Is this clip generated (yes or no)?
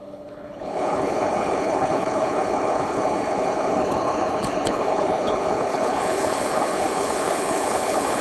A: yes